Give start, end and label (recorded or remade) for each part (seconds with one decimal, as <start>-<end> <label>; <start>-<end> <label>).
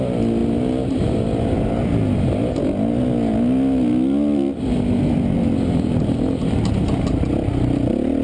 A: 0.0-8.2 recorded